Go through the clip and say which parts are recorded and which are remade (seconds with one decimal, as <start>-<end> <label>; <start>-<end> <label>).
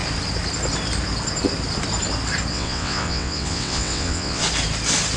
0.0-2.5 recorded; 2.5-4.4 remade; 4.4-5.2 recorded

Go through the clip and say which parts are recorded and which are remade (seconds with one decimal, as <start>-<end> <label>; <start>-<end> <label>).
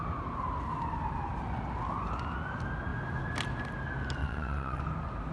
0.0-4.2 recorded; 4.2-4.8 remade; 4.8-5.3 recorded